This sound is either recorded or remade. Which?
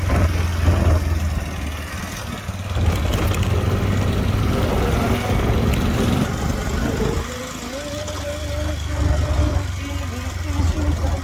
recorded